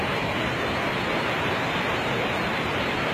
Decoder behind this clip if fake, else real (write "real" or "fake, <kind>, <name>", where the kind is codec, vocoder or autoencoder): real